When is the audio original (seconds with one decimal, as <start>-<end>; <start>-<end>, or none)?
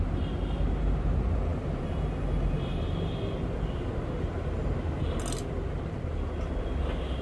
0.0-7.2